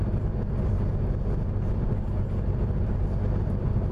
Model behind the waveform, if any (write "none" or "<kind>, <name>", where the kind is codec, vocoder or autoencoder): none